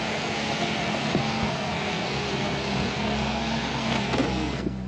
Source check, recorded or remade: remade